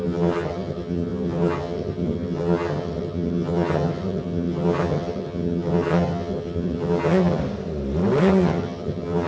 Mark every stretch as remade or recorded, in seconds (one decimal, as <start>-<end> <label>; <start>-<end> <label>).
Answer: 0.0-7.4 remade; 7.4-8.2 recorded; 8.2-9.3 remade